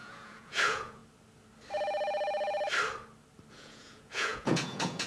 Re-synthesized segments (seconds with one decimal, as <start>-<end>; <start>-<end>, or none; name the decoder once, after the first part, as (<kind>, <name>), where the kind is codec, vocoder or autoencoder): 0.0-1.0 (vocoder, Vocos); 3.5-5.1